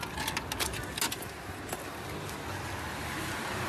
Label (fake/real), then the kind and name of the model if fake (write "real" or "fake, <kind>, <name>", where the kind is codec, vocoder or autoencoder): real